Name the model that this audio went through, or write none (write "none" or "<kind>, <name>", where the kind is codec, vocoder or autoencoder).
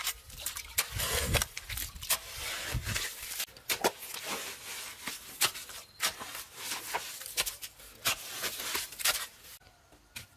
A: none